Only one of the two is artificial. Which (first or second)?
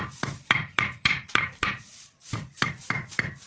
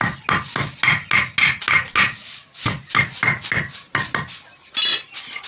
first